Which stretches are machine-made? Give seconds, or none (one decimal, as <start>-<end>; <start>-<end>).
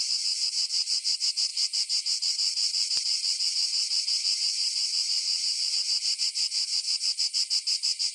0.0-8.1